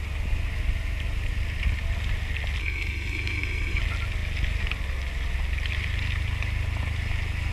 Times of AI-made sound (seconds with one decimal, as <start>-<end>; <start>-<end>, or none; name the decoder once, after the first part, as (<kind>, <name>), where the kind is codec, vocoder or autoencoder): 2.6-3.8 (codec, SNAC)